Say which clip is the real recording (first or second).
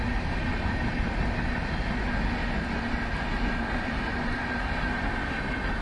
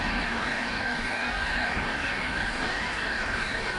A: first